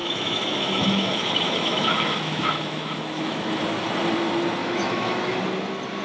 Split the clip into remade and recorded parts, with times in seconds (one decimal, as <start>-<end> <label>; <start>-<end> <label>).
0.0-3.6 remade; 3.6-4.6 recorded; 4.6-5.4 remade; 5.4-6.0 recorded